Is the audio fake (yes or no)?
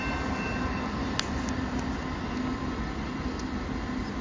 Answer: no